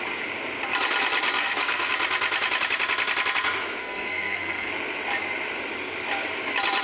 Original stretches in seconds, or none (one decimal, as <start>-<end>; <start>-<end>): 0.0-1.4; 1.9-3.8; 4.7-6.8